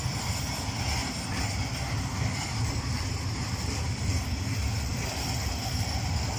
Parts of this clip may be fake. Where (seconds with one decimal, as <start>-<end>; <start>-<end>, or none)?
4.9-6.4